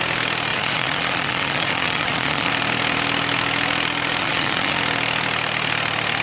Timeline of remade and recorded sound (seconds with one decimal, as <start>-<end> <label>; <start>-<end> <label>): 0.0-0.5 recorded; 0.5-2.5 remade; 2.5-4.2 recorded; 4.2-4.8 remade; 4.8-6.2 recorded